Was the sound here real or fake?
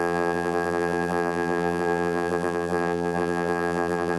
fake